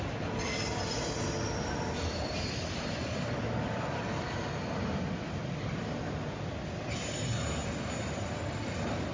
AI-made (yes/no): no